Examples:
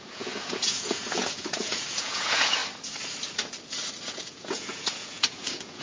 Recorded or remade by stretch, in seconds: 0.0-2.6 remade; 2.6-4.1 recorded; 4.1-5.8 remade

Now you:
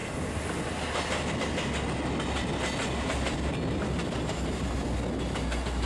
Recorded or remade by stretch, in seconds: 0.0-5.9 recorded